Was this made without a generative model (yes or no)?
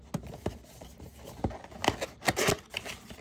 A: yes